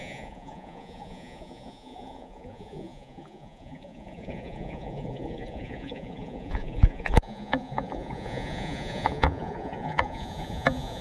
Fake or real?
fake